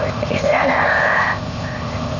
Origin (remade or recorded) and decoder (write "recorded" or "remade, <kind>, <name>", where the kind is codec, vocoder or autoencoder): remade, codec, ZipCodec